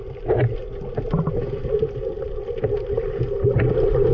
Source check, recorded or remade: recorded